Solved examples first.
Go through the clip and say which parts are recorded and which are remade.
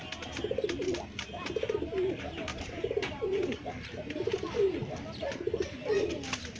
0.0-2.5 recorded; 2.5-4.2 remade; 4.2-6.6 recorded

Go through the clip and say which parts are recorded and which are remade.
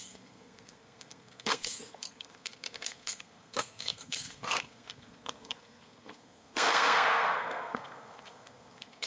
0.0-9.1 remade